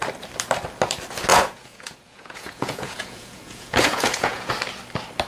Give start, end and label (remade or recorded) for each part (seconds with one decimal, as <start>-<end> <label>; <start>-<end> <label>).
0.0-1.3 recorded; 1.3-4.5 remade; 4.5-5.3 recorded